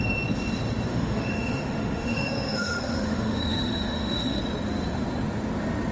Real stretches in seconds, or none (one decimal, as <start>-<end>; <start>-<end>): 0.0-0.9; 4.4-5.9